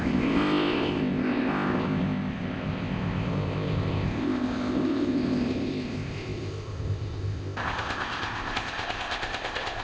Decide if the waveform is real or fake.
fake